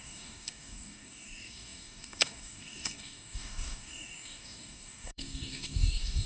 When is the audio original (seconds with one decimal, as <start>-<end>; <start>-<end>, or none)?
none